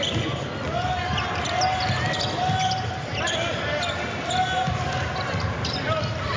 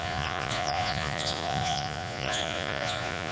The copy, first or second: second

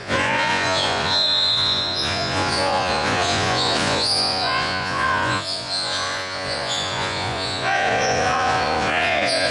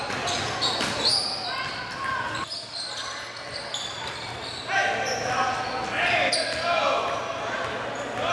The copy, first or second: first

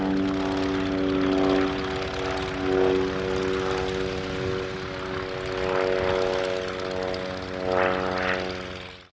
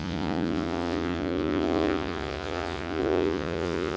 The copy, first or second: second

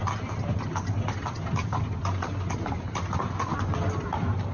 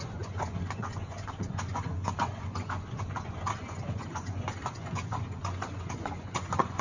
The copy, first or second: second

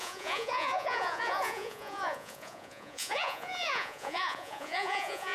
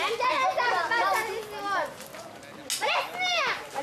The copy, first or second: first